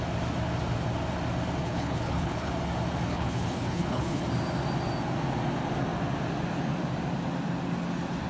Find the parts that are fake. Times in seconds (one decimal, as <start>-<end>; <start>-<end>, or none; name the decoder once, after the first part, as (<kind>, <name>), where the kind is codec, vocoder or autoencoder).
1.6-2.5 (codec, HILCodec); 3.1-4.2